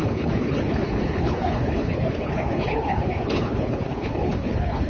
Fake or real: fake